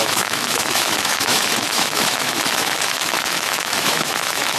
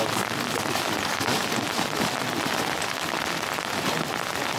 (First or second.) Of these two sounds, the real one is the second